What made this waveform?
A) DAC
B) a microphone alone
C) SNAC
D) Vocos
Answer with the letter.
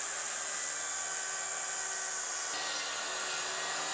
B